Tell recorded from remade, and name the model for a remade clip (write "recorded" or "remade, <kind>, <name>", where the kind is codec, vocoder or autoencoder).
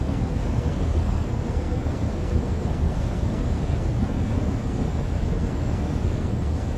remade, codec, SNAC